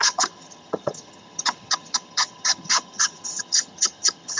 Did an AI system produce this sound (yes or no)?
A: yes